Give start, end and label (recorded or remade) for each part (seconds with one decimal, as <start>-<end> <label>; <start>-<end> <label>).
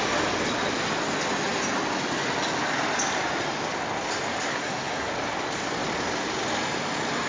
0.0-4.5 recorded; 4.5-5.1 remade; 5.1-7.3 recorded